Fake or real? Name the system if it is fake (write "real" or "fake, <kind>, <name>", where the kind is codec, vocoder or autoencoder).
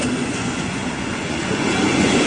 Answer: fake, vocoder, Vocos